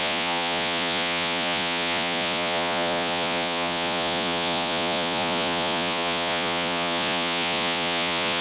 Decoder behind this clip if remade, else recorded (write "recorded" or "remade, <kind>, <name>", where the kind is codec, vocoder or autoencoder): remade, vocoder, Vocos